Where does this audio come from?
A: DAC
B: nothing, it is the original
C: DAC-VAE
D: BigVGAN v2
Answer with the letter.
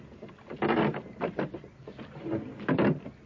B